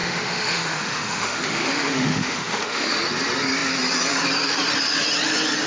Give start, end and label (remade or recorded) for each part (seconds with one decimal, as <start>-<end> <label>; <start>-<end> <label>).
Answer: 0.0-2.9 remade; 2.9-5.7 recorded